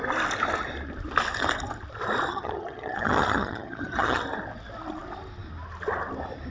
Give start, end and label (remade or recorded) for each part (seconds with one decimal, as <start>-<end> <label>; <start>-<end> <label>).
0.0-2.3 recorded; 2.3-4.2 remade; 4.2-6.5 recorded